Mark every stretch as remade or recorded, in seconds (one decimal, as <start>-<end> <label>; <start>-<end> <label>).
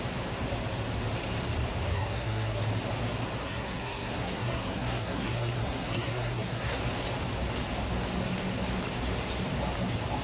0.0-1.9 recorded; 1.9-2.6 remade; 2.6-3.4 recorded; 3.4-6.8 remade; 6.8-10.2 recorded